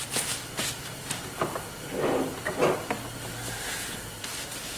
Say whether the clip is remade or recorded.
recorded